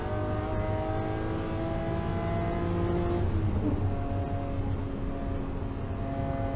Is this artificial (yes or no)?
no